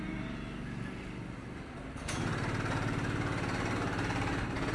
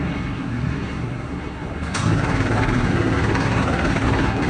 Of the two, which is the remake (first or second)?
second